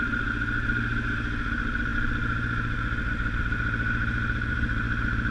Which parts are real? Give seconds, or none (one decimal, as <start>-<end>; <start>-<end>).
0.0-5.3